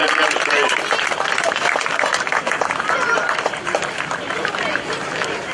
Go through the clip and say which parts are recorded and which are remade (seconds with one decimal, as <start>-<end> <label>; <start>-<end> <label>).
0.0-1.5 recorded; 1.5-2.1 remade; 2.1-3.1 recorded; 3.1-5.5 remade